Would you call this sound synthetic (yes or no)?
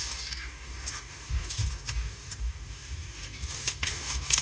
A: yes